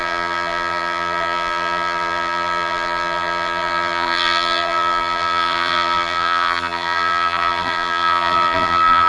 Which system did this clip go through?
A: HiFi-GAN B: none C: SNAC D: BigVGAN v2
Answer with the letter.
D